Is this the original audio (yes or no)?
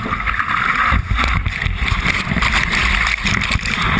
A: yes